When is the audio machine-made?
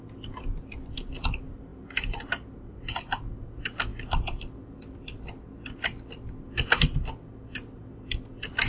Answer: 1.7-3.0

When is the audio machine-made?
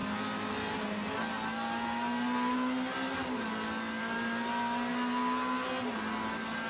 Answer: none